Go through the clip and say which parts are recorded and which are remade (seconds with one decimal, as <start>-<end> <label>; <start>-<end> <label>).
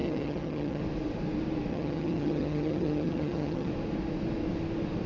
0.0-0.8 remade; 0.8-1.7 recorded; 1.7-3.7 remade; 3.7-5.1 recorded